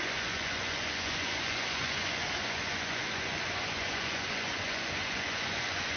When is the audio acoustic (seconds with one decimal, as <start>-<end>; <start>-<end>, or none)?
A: none